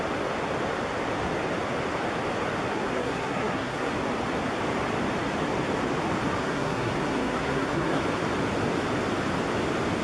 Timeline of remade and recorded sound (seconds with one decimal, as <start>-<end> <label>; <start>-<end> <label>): 0.0-2.7 recorded; 2.7-3.9 remade; 3.9-6.4 recorded; 6.4-8.0 remade; 8.0-10.0 recorded